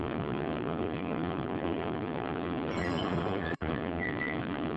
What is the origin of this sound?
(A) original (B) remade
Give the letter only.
B